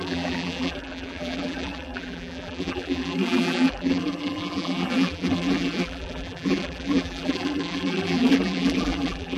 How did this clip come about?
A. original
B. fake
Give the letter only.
B